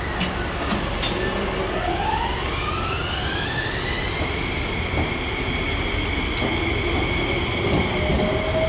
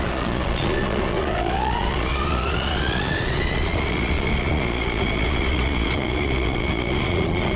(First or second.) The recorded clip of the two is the first